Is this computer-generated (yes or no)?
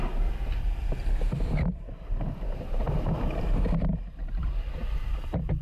yes